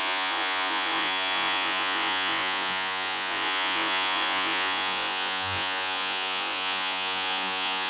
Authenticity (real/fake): fake